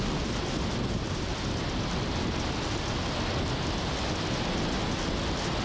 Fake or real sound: real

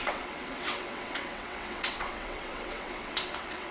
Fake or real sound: fake